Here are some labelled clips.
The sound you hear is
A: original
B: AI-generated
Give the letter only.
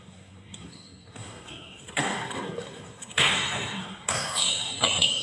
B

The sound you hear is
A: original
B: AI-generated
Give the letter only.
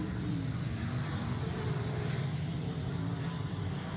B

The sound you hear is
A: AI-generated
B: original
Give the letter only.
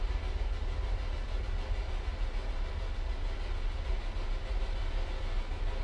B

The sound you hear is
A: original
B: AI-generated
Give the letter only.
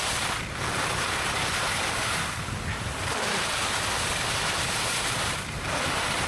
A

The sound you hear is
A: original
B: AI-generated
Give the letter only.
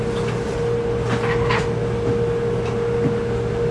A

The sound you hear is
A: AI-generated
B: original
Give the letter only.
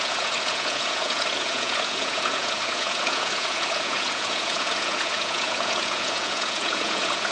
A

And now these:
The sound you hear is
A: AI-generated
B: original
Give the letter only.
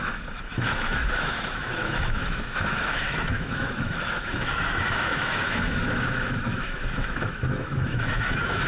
A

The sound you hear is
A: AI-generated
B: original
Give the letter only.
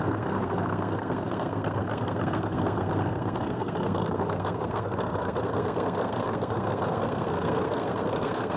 A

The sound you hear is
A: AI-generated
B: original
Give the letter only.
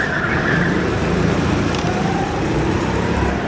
A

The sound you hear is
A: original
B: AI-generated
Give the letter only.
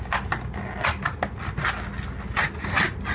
A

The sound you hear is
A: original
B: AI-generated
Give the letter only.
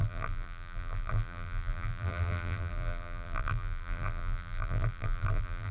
B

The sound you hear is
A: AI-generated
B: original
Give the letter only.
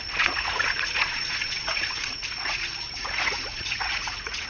A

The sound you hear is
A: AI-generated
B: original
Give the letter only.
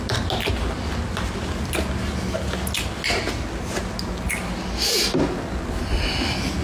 B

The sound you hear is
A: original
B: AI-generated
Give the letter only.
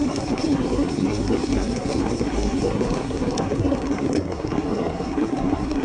B